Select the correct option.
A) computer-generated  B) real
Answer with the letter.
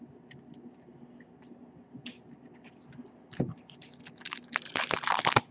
B